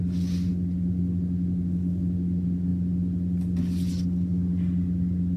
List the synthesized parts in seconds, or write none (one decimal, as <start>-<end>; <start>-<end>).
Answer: none